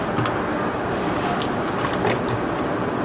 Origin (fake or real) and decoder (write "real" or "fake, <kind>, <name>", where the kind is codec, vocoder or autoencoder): real